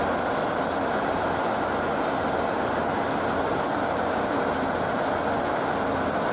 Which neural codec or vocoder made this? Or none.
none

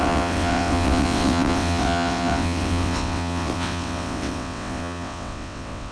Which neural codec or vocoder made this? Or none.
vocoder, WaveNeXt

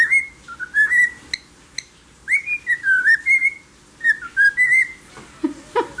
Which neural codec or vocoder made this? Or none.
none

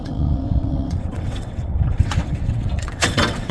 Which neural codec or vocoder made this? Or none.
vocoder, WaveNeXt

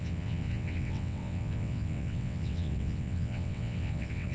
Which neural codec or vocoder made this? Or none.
vocoder, WaveNeXt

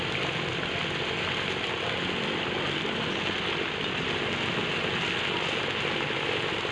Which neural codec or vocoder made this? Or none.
none